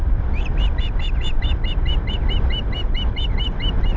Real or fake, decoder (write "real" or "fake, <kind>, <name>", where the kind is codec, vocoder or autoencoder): real